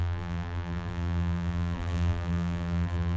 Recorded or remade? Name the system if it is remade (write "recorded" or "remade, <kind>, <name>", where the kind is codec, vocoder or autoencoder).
remade, vocoder, BigVGAN v2